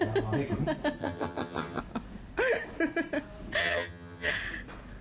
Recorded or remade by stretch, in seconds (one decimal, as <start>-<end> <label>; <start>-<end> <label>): 0.0-1.0 recorded; 1.0-1.8 remade; 1.8-3.6 recorded; 3.6-4.3 remade; 4.3-5.0 recorded